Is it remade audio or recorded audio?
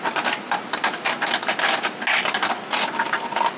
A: recorded